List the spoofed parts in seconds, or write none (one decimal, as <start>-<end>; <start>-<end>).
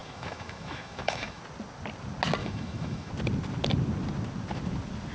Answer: 0.0-1.4; 2.4-3.1